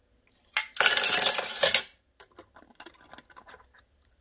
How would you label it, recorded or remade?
recorded